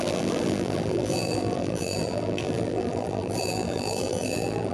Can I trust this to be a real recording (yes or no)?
no